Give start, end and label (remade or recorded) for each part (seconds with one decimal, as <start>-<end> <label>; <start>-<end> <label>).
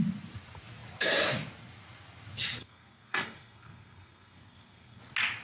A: 0.0-2.6 recorded; 2.6-5.0 remade; 5.0-5.4 recorded